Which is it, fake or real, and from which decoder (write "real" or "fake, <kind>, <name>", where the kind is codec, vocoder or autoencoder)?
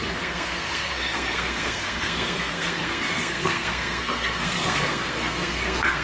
fake, codec, SNAC